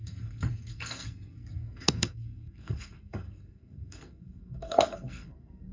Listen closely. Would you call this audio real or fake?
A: fake